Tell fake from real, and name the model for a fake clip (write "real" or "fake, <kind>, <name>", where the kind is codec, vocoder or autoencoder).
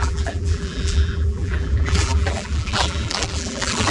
fake, vocoder, BigVGAN v2